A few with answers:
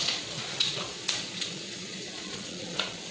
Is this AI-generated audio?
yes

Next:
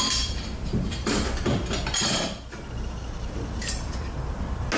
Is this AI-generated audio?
no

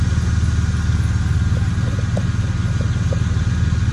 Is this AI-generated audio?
no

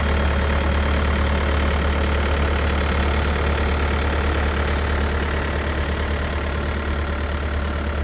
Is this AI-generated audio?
no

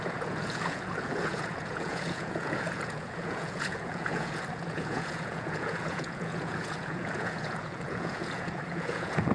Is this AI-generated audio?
yes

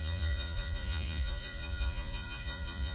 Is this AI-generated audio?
yes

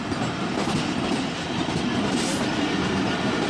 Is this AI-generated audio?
no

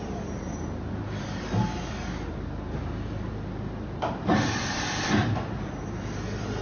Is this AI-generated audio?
no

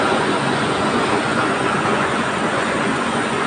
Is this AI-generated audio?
yes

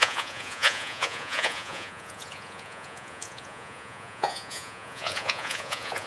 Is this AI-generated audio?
yes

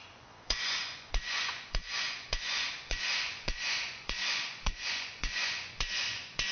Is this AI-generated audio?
yes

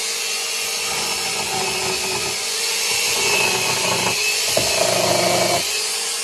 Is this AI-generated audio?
yes